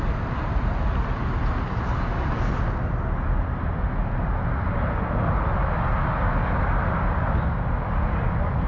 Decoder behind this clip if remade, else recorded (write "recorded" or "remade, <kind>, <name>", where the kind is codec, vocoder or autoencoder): recorded